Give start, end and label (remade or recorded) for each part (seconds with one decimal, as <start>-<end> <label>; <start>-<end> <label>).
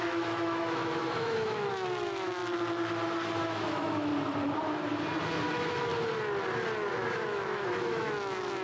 0.0-2.4 remade; 2.4-3.4 recorded; 3.4-4.1 remade; 4.1-5.5 recorded; 5.5-5.9 remade; 5.9-6.9 recorded; 6.9-8.6 remade